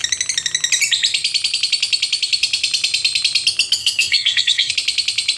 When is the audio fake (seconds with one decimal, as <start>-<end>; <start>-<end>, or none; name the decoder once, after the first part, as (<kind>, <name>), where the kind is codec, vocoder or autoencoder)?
3.8-4.7 (codec, SNAC)